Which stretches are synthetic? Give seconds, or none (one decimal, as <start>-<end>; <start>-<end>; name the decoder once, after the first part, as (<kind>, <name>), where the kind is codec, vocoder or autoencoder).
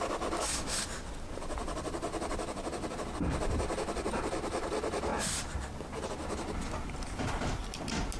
0.5-4.2 (vocoder, BigVGAN v2)